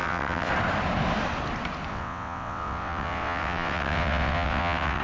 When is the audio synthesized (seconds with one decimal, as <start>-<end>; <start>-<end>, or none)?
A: 0.0-0.5; 1.9-5.0